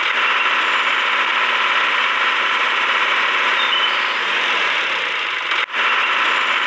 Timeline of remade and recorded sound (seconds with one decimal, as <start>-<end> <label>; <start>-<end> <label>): 0.0-2.0 recorded; 2.0-5.4 remade; 5.4-6.0 recorded; 6.0-6.7 remade